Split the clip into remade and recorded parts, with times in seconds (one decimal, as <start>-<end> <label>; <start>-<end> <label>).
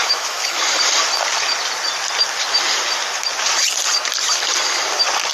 0.0-0.6 remade; 0.6-5.3 recorded